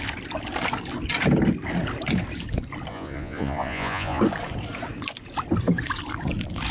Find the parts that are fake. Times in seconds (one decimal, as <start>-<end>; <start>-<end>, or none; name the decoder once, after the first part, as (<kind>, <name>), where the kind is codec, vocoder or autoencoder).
2.9-4.2 (vocoder, Vocos)